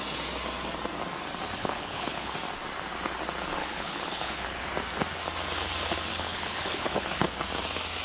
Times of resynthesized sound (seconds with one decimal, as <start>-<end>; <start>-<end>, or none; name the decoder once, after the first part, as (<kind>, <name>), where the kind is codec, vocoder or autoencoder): 1.6-2.3 (codec, HILCodec); 3.6-4.7; 6.1-7.4